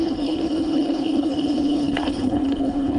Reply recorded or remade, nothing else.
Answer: remade